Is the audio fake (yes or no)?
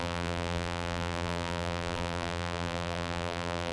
yes